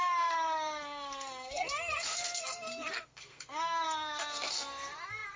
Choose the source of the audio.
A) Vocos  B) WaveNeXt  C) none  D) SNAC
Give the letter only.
D